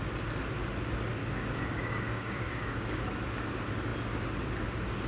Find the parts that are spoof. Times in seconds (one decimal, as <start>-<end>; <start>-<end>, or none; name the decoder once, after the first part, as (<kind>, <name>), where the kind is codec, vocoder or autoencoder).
1.2-3.0 (codec, DAC)